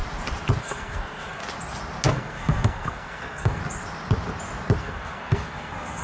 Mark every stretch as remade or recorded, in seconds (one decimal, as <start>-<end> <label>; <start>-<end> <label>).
0.0-0.6 recorded; 0.6-1.4 remade; 1.4-2.1 recorded; 2.1-3.6 remade; 3.6-4.8 recorded; 4.8-6.0 remade